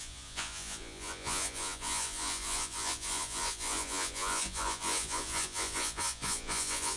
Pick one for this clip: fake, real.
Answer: fake